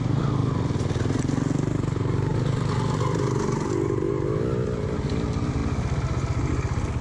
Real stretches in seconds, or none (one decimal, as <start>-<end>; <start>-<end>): 0.0-7.0